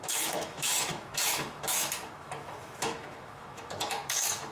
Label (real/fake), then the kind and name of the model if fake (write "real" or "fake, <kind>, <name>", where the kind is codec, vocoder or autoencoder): fake, autoencoder, DAC-VAE